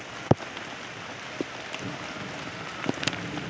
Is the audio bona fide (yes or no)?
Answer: yes